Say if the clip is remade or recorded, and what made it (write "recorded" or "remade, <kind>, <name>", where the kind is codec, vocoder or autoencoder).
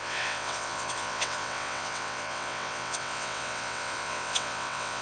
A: remade, vocoder, WaveNeXt